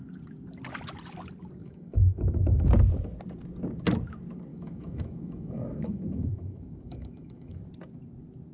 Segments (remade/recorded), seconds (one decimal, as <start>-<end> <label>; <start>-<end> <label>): 0.0-1.6 recorded; 1.6-2.7 remade; 2.7-4.5 recorded; 4.5-7.6 remade; 7.6-8.5 recorded